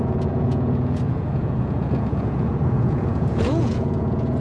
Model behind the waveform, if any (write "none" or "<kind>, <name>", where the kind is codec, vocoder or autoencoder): vocoder, Vocos